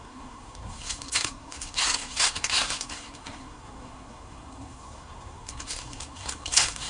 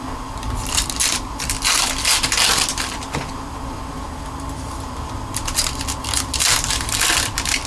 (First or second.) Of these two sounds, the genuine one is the second